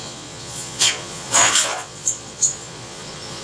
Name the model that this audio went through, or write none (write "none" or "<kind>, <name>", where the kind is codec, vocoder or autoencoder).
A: vocoder, Vocos